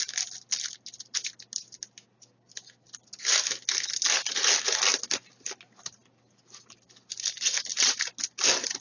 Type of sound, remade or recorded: recorded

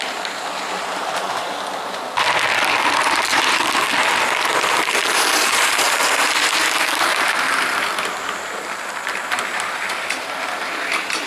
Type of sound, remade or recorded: remade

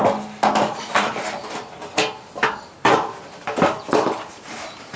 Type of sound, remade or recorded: recorded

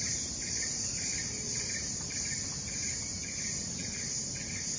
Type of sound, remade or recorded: remade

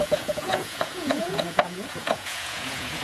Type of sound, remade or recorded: remade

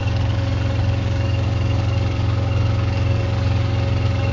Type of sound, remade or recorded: remade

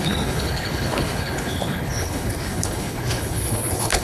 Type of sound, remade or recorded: remade